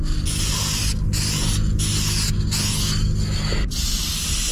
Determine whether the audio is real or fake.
real